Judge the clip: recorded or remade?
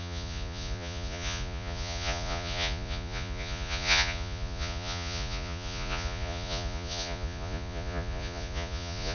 remade